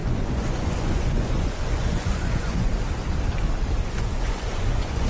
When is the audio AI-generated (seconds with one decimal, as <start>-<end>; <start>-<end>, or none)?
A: 0.0-2.7; 3.8-5.1